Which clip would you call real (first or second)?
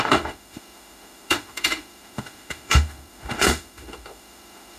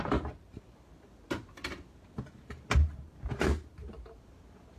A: second